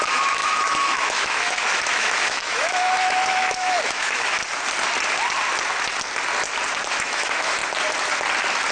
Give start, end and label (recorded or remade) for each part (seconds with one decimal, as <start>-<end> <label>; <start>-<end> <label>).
0.0-4.4 remade; 4.4-6.9 recorded; 6.9-7.6 remade; 7.6-8.7 recorded